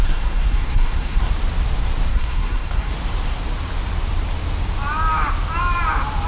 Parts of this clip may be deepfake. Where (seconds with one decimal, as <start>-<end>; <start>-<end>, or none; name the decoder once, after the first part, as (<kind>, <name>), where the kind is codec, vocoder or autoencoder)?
0.0-1.3 (codec, SNAC); 2.1-2.9